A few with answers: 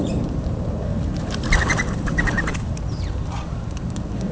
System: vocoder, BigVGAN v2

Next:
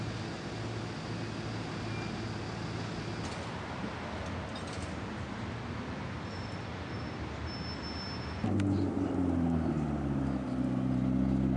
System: none